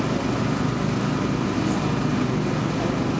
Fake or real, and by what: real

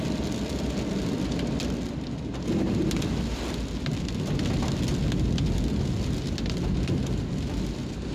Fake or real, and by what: real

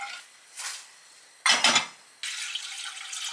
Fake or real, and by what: real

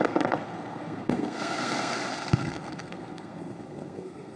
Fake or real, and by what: fake, codec, SNAC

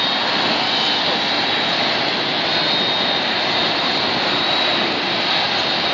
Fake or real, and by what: real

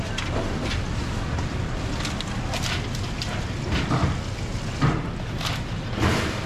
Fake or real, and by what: real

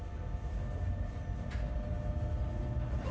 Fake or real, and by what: real